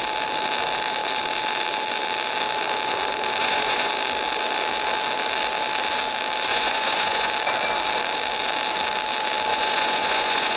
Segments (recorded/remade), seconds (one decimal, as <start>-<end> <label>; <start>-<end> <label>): 0.0-3.4 recorded; 3.4-3.9 remade; 3.9-6.5 recorded; 6.5-7.3 remade; 7.3-9.5 recorded; 9.5-10.6 remade